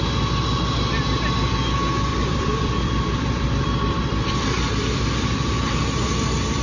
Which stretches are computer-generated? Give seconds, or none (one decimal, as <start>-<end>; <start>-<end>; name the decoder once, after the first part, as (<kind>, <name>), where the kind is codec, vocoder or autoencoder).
2.1-5.7 (vocoder, BigVGAN v2)